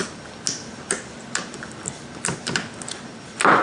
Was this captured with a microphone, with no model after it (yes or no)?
yes